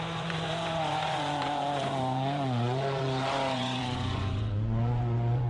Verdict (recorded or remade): remade